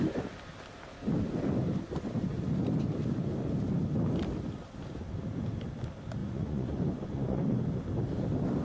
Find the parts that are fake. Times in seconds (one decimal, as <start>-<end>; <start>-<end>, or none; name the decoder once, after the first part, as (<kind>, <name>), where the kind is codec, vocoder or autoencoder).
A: 6.2-7.6 (vocoder, Vocos)